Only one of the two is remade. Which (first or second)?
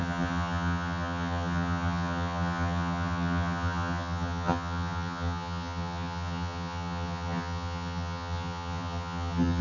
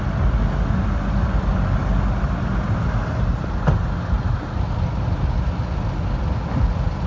first